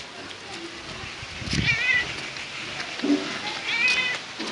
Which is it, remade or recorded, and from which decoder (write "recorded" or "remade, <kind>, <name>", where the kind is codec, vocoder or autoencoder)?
recorded